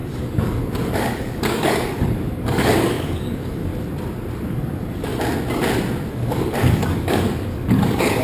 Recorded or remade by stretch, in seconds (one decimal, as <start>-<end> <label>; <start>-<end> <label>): 0.0-3.7 remade; 3.7-4.5 recorded; 4.5-5.1 remade; 5.1-6.1 recorded; 6.1-8.2 remade